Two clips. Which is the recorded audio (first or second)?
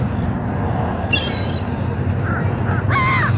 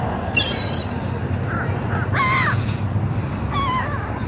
first